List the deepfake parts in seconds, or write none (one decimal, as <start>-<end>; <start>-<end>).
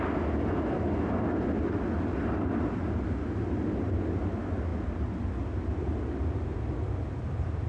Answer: none